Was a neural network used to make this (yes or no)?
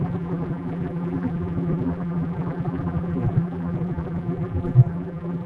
yes